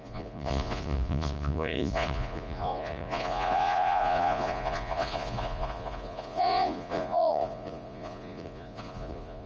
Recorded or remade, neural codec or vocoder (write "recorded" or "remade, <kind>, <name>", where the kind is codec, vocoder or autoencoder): remade, vocoder, Vocos